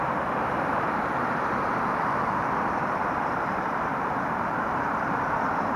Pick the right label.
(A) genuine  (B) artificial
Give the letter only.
B